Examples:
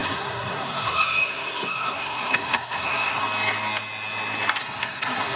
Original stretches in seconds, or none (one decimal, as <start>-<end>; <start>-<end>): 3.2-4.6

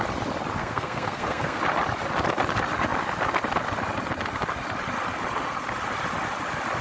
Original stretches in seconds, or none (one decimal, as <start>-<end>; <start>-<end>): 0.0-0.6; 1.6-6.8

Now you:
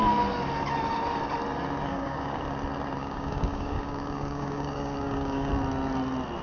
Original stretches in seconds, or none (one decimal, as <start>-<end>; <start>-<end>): 0.0-1.9; 2.4-3.0; 5.5-6.4